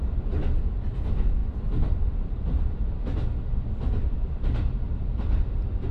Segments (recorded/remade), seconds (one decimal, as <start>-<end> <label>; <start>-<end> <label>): 0.0-5.9 recorded